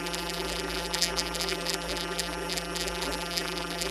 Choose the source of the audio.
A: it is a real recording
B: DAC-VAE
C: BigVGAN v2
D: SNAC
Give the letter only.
C